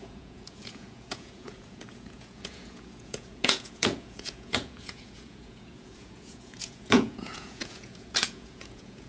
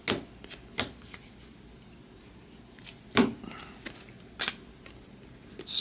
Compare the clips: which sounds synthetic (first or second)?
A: first